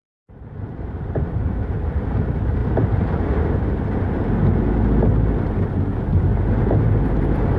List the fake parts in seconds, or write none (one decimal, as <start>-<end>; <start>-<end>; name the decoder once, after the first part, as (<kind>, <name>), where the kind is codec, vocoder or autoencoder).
0.0-1.5 (vocoder, BigVGAN v2); 2.6-3.6